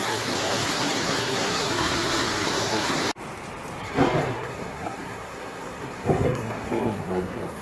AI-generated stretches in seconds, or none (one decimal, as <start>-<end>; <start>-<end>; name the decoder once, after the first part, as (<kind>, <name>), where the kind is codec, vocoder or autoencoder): 0.0-3.0 (codec, SNAC); 3.8-7.6